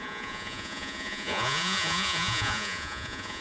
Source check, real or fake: fake